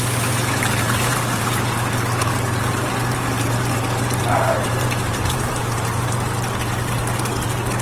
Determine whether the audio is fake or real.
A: fake